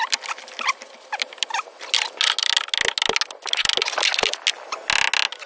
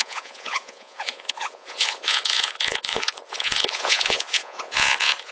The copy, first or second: second